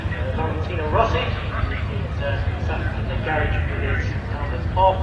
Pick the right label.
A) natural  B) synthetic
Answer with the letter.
B